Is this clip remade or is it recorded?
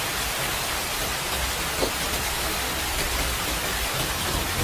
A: recorded